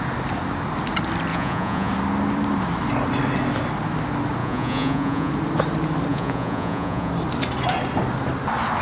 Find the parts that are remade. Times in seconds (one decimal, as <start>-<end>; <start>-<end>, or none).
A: 1.3-1.9; 4.4-5.3; 6.1-7.1